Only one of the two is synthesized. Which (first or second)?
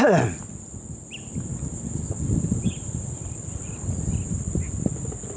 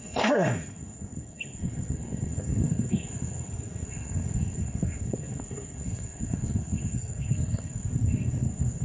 second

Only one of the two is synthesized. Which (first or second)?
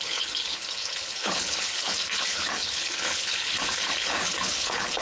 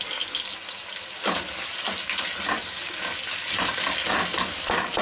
first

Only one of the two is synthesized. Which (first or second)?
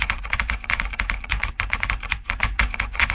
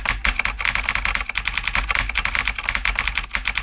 first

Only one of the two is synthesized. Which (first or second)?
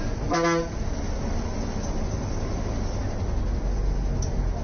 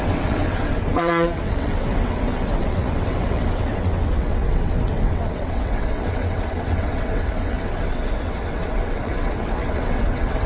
second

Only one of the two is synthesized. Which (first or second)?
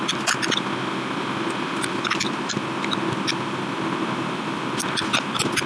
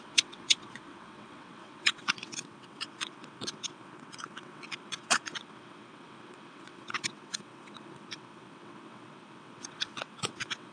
second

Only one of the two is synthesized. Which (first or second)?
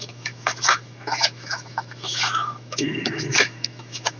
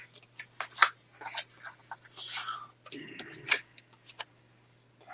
first